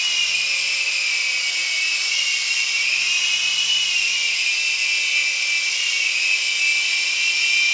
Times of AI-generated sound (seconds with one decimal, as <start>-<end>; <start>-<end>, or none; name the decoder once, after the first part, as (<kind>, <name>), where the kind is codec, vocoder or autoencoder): none